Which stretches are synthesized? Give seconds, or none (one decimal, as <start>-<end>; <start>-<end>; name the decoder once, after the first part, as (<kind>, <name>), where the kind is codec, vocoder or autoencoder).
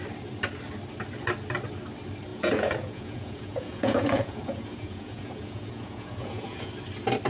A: 2.3-6.7 (vocoder, Vocos)